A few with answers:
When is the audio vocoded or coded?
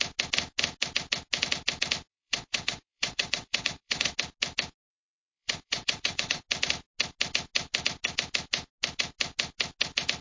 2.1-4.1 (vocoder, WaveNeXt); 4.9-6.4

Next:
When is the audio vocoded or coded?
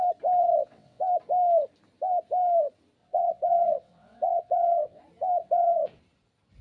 0.4-1.0 (vocoder, WaveNeXt); 3.0-5.0; 5.4-6.0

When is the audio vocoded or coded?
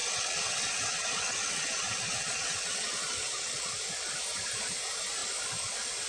0.0-3.7 (vocoder, WaveNeXt)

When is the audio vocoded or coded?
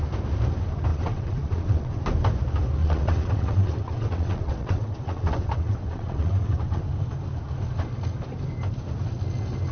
0.9-2.0 (vocoder, WaveNeXt); 2.8-6.8